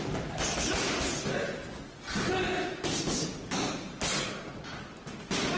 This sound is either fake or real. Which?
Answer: real